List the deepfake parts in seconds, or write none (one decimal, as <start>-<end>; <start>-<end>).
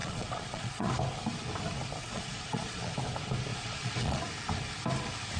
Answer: 0.0-0.9; 2.1-2.9; 3.5-4.2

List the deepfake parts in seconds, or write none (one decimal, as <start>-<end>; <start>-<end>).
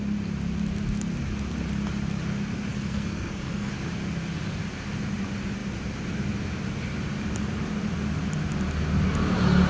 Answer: 2.7-3.7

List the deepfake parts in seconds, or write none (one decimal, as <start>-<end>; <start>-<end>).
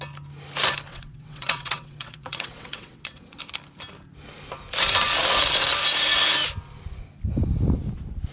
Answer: 0.9-3.4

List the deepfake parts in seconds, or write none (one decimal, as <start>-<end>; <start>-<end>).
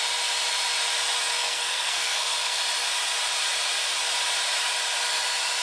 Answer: 1.3-2.6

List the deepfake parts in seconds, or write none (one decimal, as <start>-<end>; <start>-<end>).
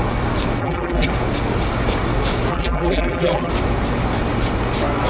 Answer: 0.6-1.1; 2.5-3.5